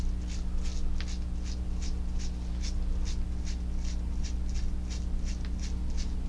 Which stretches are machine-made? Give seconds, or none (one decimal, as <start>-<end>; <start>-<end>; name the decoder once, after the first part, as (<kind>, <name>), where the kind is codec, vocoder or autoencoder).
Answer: none

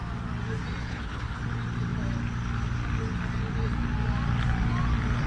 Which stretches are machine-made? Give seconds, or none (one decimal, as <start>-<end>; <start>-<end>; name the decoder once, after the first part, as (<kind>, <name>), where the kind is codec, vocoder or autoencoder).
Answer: 0.8-1.4 (codec, HILCodec)

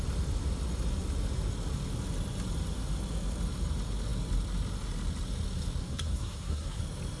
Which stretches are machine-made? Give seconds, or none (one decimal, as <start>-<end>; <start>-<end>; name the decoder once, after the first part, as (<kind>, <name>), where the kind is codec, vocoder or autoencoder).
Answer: 5.8-6.8 (codec, SNAC)

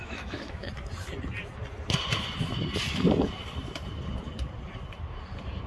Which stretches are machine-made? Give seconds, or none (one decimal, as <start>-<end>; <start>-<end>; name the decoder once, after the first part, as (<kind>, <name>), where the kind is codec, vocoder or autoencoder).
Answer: 0.0-0.7 (autoencoder, DAC-VAE)

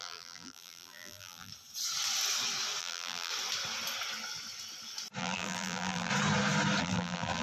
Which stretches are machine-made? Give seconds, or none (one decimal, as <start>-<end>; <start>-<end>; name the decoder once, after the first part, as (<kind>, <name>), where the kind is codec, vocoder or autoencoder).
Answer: 0.0-1.5 (vocoder, BigVGAN v2); 2.8-3.3; 5.2-6.1; 6.8-7.4

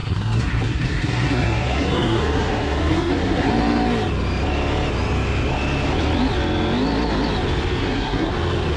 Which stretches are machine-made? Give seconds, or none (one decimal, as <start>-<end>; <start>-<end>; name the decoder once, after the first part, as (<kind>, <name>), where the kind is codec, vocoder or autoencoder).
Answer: 0.0-3.5 (codec, SNAC); 7.8-8.3

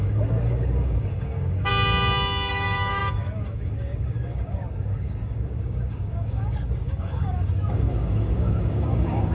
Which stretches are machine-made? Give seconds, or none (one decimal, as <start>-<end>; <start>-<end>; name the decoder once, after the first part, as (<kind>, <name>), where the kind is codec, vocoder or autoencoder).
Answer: 0.0-1.7 (codec, DAC); 2.5-9.3

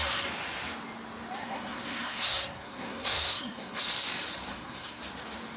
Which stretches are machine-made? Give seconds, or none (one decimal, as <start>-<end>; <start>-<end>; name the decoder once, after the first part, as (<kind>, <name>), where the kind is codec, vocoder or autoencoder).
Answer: 1.4-3.8 (codec, SNAC); 4.5-5.0